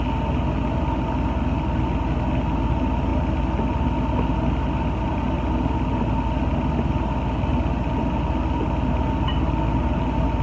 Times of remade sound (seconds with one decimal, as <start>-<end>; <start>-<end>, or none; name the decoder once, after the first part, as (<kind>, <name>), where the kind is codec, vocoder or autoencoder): none